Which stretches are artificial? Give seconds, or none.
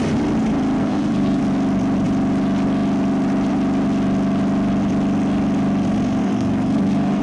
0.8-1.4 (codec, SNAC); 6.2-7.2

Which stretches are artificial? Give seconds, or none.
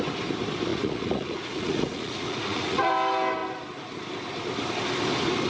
0.7-2.9 (vocoder, Vocos)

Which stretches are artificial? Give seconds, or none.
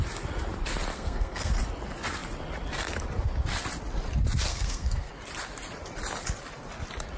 0.9-1.5 (codec, SNAC); 4.5-5.1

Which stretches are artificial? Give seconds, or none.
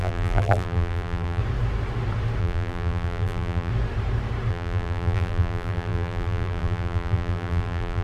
0.0-1.4 (vocoder, BigVGAN v2); 2.4-3.7; 4.5-8.0